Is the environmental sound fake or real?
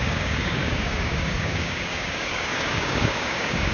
fake